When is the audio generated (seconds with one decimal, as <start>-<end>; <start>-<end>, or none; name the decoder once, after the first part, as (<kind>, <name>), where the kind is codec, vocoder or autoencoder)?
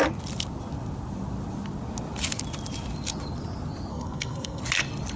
3.9-4.6 (codec, SNAC)